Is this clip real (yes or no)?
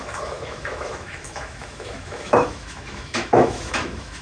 no